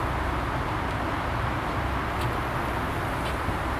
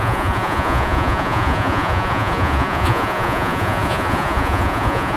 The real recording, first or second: first